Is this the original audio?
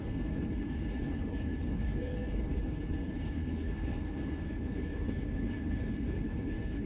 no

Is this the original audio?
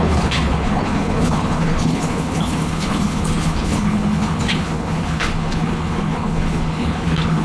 no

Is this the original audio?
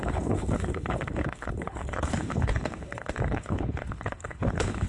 no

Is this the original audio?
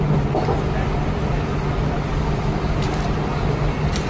yes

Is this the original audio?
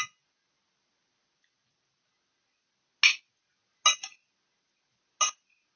yes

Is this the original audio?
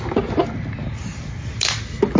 yes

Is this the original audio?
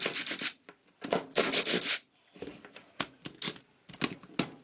yes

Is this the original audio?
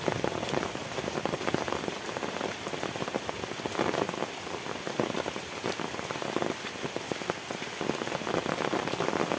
yes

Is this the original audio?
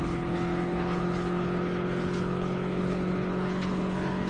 no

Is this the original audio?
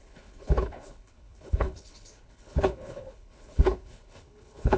no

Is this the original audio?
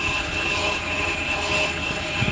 no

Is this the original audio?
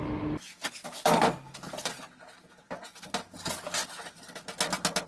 yes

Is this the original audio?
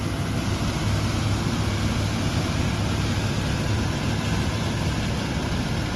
yes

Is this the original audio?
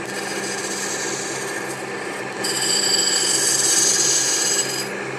yes